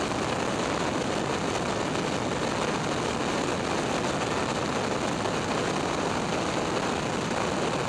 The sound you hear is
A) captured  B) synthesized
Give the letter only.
A